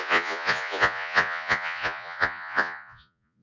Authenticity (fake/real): fake